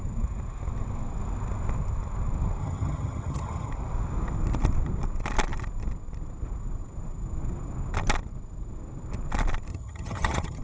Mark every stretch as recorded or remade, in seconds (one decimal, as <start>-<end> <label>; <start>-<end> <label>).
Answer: 0.0-2.6 recorded; 2.6-3.7 remade; 3.7-9.7 recorded; 9.7-10.6 remade